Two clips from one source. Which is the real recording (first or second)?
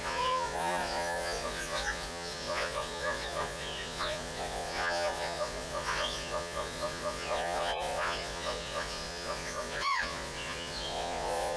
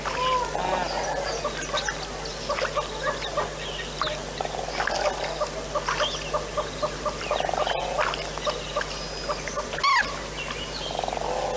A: second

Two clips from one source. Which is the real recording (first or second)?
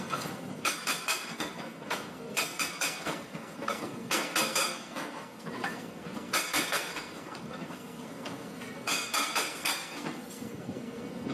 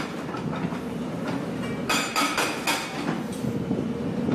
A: second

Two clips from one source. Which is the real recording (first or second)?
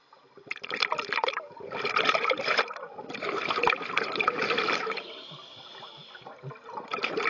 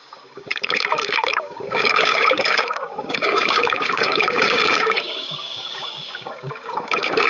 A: first